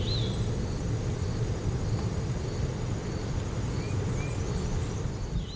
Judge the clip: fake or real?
real